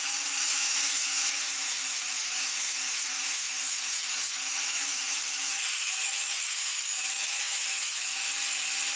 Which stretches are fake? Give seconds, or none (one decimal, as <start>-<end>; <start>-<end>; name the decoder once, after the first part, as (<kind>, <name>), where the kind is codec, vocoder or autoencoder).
0.0-8.3 (autoencoder, DAC-VAE)